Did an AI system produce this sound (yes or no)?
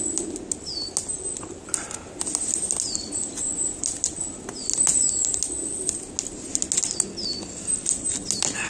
no